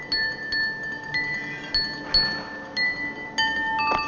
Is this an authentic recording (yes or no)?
yes